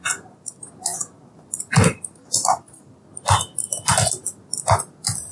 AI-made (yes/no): no